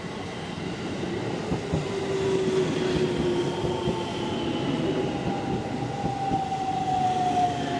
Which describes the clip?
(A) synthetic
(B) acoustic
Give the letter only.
B